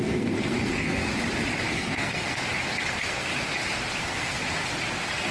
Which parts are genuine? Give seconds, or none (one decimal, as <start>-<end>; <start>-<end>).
1.1-1.6; 2.4-2.9; 3.3-4.0; 4.4-5.3